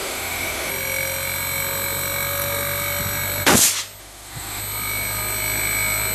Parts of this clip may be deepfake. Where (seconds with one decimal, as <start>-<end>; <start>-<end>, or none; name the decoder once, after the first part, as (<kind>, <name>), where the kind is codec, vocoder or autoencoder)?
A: 0.0-0.7 (autoencoder, DAC-VAE); 4.0-4.6